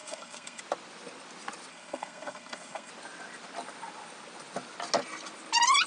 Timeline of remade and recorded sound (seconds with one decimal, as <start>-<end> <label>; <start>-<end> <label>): 0.0-0.6 remade; 0.6-1.7 recorded; 1.7-2.9 remade; 2.9-5.9 recorded